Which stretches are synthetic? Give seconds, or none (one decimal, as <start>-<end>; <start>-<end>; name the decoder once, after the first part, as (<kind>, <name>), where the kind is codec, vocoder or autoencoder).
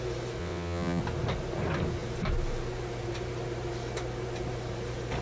0.4-1.0 (vocoder, WaveNeXt)